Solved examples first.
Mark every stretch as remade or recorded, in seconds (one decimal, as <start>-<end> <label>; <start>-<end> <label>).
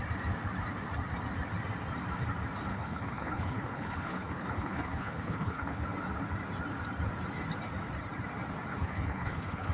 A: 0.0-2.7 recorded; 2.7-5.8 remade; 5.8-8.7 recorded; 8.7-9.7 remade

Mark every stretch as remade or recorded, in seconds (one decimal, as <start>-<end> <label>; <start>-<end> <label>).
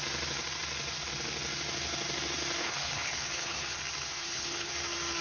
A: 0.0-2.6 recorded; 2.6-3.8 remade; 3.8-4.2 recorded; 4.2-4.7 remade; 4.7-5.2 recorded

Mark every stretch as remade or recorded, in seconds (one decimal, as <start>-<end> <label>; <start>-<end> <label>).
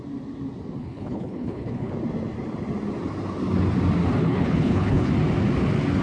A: 0.0-0.8 recorded; 0.8-1.9 remade; 1.9-4.2 recorded; 4.2-5.1 remade; 5.1-6.0 recorded